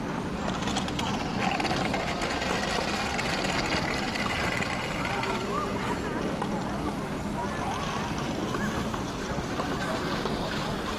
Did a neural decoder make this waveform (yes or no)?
no